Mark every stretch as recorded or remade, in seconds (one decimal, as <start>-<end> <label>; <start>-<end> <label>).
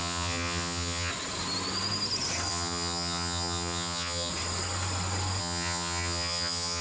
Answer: 0.0-1.1 remade; 1.1-2.5 recorded; 2.5-4.3 remade; 4.3-5.4 recorded; 5.4-6.8 remade